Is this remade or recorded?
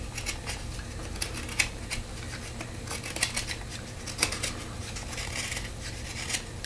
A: recorded